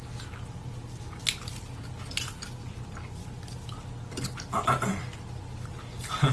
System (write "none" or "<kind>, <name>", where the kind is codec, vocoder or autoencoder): none